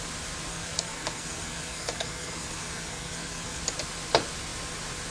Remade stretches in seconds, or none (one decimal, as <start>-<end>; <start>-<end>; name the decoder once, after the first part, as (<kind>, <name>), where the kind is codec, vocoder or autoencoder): 0.5-3.6 (codec, SNAC)